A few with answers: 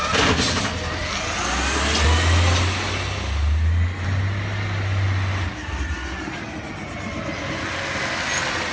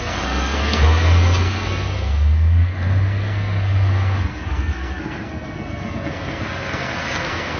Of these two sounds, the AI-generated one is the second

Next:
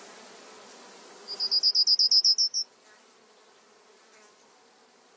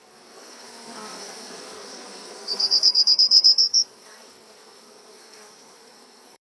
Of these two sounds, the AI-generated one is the second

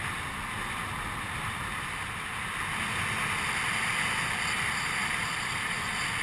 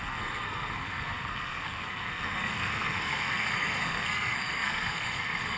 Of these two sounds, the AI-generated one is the second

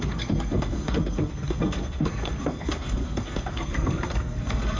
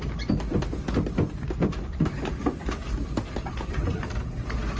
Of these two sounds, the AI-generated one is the first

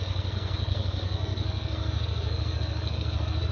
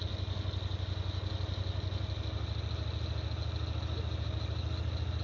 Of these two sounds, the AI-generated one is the first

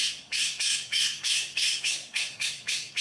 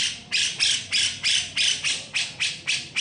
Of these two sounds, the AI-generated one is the first